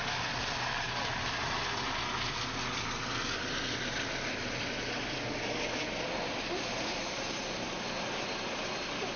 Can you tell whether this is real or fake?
real